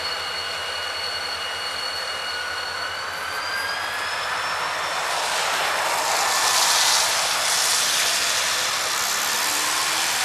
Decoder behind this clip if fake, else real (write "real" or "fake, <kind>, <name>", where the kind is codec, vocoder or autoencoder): real